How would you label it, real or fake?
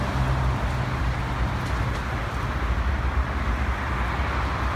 real